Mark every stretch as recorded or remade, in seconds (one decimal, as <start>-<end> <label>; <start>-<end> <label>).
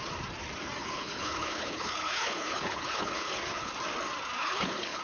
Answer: 0.0-0.8 recorded; 0.8-3.7 remade; 3.7-4.4 recorded; 4.4-5.0 remade